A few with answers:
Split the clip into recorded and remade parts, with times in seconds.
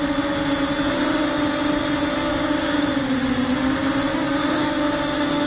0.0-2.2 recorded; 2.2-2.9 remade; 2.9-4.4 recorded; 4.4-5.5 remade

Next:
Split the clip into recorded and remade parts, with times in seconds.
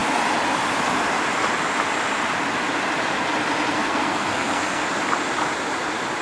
0.0-3.7 recorded; 3.7-4.8 remade; 4.8-6.2 recorded